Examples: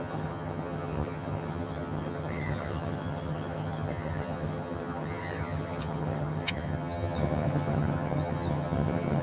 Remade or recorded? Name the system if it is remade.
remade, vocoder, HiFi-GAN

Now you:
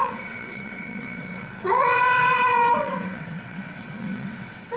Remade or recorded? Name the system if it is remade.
remade, vocoder, WaveNeXt